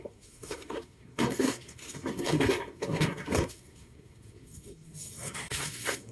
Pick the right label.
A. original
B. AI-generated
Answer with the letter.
B